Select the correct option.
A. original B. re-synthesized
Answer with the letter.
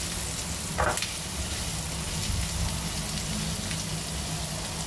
A